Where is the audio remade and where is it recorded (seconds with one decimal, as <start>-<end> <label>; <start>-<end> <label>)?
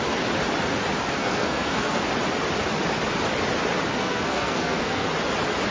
0.0-1.2 recorded; 1.2-2.0 remade; 2.0-3.9 recorded; 3.9-5.1 remade; 5.1-5.7 recorded